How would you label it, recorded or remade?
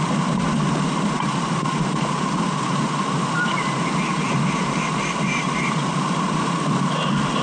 remade